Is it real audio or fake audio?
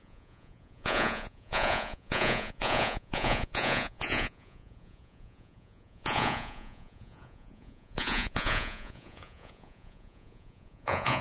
fake